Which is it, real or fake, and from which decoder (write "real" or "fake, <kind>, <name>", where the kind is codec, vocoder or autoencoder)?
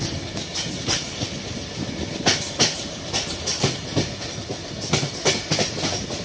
real